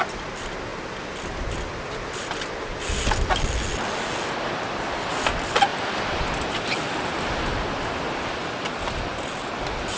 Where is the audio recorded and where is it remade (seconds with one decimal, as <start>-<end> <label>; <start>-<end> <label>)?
0.0-0.7 recorded; 0.7-3.0 remade; 3.0-5.7 recorded; 5.7-6.2 remade; 6.2-7.1 recorded; 7.1-8.7 remade; 8.7-9.1 recorded; 9.1-10.0 remade